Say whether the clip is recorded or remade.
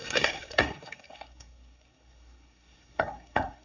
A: remade